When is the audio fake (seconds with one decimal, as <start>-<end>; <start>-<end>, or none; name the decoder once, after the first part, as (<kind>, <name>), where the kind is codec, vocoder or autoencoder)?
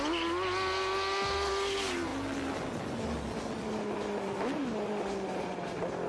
none